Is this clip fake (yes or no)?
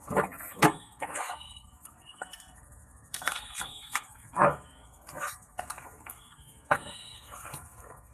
yes